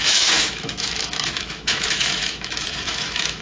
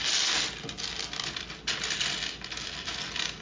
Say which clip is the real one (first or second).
second